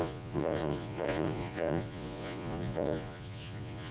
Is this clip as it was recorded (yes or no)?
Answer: no